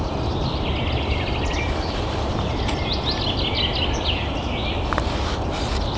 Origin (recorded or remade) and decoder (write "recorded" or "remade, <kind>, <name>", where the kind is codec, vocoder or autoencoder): recorded